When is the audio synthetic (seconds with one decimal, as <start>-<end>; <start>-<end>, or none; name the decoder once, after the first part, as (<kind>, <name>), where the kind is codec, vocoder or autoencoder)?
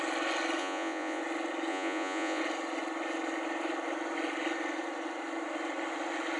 0.6-1.2 (vocoder, Vocos); 1.7-2.4